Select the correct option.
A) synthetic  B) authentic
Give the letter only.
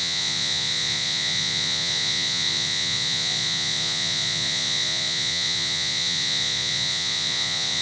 A